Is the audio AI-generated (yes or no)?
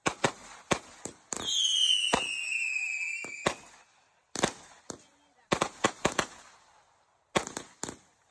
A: no